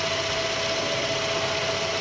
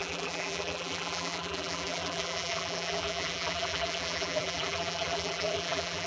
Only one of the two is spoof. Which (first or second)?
second